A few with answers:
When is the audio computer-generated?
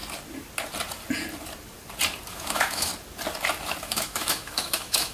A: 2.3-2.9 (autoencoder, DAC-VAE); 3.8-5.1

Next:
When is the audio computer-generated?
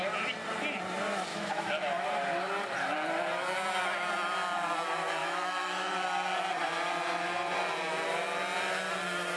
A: 1.3-1.9 (autoencoder, DAC-VAE); 5.2-5.9